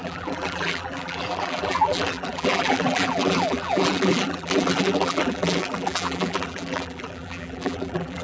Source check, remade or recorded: remade